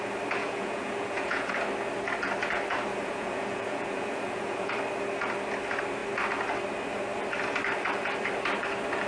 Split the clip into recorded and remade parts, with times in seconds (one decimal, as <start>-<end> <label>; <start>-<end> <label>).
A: 0.0-0.4 recorded; 0.4-1.5 remade; 1.5-2.9 recorded; 2.9-4.7 remade; 4.7-9.1 recorded